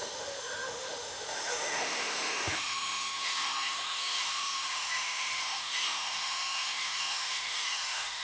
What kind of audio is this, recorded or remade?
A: remade